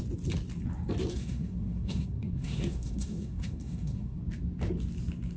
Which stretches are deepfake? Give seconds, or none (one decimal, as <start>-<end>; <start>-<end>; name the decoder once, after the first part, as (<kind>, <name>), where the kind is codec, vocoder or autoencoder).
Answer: 1.1-4.2 (codec, SNAC)